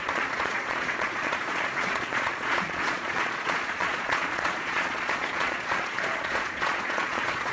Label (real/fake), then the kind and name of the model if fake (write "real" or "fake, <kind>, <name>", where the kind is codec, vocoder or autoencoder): fake, vocoder, Vocos